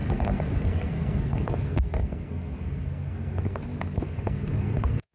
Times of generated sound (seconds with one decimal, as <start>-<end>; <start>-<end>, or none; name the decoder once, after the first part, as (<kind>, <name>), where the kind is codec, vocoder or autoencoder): 0.0-5.1 (codec, SNAC)